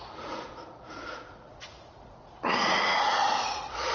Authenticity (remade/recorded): remade